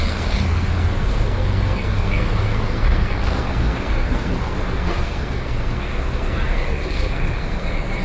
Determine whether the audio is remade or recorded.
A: remade